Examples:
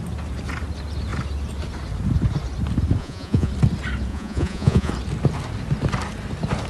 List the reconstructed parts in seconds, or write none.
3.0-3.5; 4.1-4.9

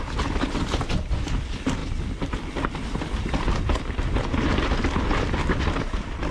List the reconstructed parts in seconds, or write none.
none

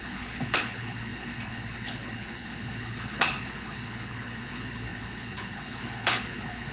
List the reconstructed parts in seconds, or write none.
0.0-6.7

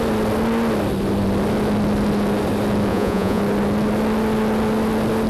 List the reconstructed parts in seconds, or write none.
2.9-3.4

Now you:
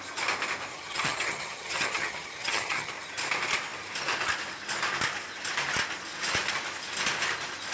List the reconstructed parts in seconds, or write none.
0.7-2.9

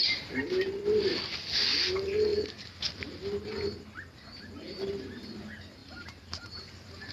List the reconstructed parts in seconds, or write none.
5.8-6.4

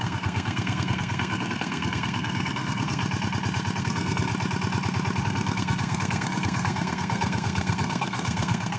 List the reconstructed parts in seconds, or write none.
0.0-3.0; 3.8-4.3; 5.2-8.8

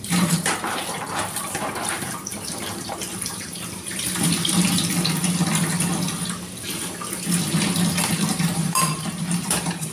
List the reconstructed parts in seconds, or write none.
0.0-4.3; 8.3-9.9